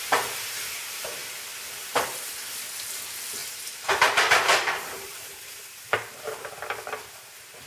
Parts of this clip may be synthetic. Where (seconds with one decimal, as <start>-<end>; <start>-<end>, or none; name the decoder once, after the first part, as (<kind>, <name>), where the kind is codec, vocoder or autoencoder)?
3.4-6.5 (vocoder, BigVGAN v2)